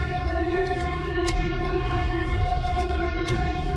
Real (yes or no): no